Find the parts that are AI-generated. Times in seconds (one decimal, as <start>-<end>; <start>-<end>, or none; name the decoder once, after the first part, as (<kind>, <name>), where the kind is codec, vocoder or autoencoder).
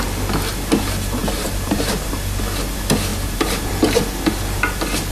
1.2-2.1 (vocoder, BigVGAN v2); 3.1-3.7